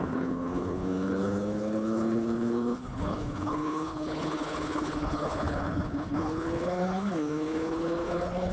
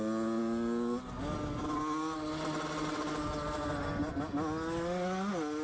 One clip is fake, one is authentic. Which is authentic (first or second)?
second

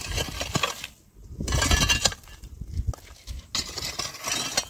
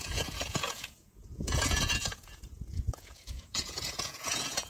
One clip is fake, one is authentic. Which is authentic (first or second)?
first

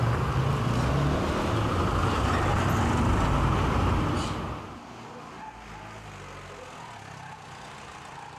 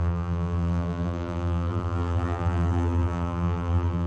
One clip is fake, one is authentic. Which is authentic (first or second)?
first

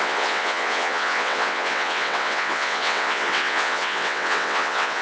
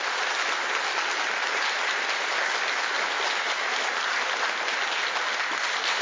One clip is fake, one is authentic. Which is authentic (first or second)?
second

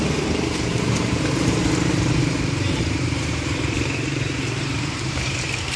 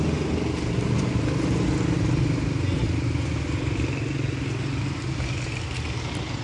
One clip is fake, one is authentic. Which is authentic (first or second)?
second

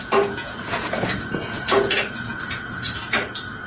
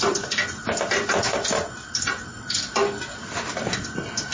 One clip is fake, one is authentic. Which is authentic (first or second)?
second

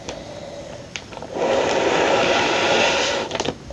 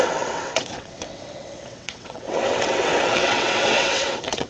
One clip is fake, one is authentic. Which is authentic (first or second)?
first